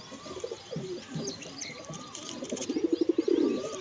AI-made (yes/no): yes